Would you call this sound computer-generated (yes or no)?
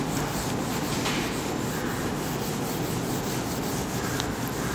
no